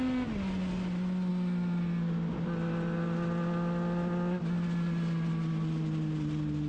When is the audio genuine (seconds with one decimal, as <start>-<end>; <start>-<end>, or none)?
0.0-6.7